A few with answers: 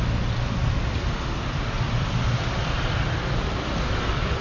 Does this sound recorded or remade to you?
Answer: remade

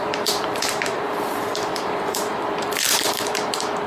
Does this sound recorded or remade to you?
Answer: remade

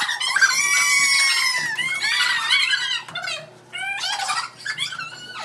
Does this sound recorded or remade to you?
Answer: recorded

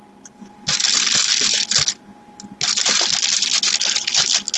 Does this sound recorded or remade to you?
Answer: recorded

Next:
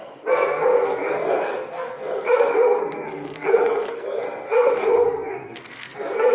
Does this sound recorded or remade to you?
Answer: remade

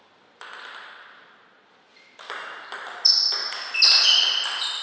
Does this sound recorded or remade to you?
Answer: recorded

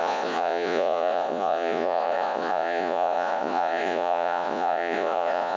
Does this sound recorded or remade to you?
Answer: remade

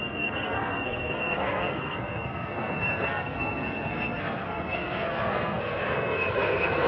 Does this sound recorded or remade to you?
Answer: remade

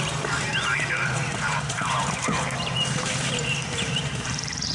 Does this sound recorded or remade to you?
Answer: remade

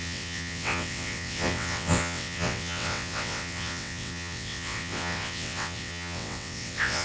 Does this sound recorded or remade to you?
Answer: remade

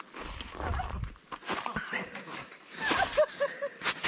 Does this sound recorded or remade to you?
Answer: recorded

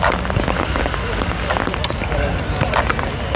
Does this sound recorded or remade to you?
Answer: recorded